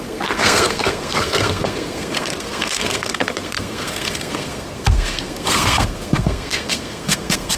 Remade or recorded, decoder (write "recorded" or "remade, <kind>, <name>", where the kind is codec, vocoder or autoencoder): remade, codec, SNAC